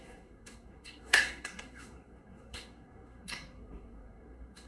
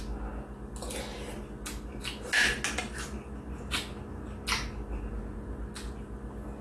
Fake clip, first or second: first